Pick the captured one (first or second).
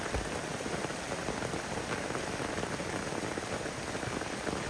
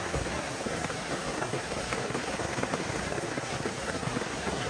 first